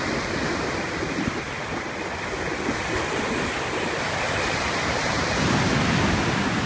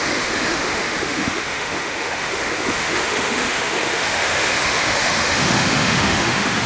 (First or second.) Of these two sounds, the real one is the first